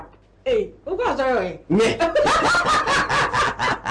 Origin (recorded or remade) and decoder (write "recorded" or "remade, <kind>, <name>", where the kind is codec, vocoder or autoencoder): recorded